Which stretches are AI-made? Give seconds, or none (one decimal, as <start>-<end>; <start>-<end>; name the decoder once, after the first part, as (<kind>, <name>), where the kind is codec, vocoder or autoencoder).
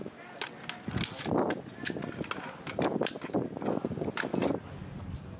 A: none